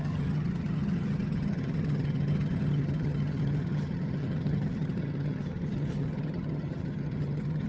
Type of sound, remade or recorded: remade